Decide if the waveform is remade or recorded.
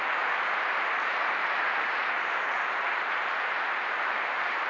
remade